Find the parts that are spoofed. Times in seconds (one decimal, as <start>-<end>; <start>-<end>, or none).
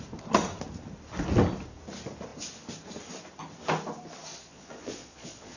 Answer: 4.3-5.6